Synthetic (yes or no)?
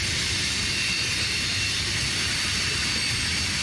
no